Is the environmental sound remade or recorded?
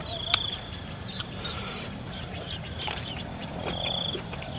remade